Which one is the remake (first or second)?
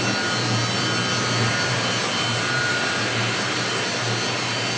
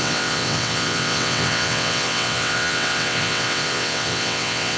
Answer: second